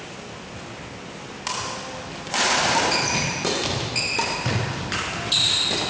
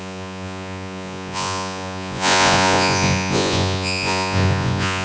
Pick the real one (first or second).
first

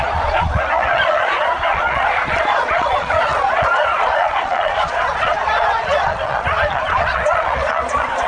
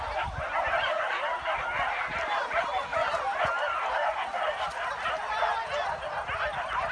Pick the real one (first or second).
second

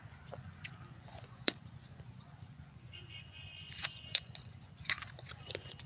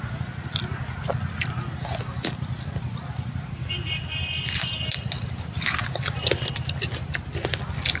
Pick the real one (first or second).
second